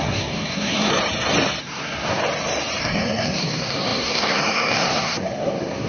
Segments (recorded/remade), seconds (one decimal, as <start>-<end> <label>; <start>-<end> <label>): 0.0-0.9 remade; 0.9-1.6 recorded; 1.6-2.2 remade; 2.2-2.8 recorded; 2.8-5.9 remade